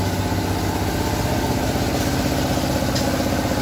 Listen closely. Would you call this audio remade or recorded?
recorded